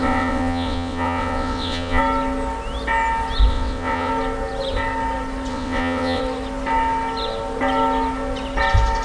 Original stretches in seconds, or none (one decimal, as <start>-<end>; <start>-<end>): 2.0-3.5; 4.1-5.5; 6.2-9.0